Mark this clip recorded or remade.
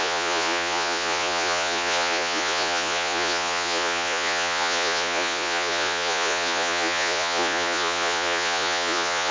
remade